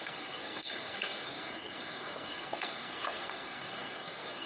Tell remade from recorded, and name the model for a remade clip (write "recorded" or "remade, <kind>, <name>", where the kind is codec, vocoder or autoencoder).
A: remade, codec, SNAC